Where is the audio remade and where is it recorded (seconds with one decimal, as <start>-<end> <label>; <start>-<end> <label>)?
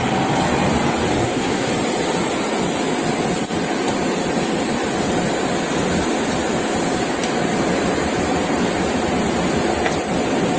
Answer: 0.0-1.2 recorded; 1.2-1.7 remade; 1.7-10.6 recorded